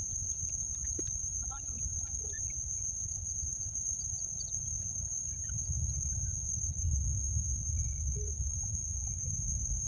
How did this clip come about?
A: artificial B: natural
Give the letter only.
B